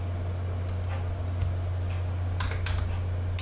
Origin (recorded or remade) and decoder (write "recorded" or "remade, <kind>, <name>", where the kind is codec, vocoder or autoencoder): recorded